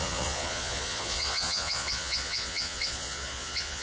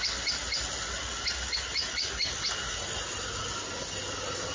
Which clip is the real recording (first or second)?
second